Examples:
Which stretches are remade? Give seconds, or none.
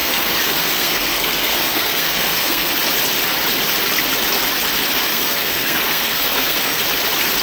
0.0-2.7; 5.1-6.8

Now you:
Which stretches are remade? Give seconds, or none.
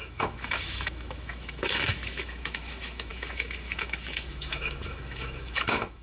0.0-6.0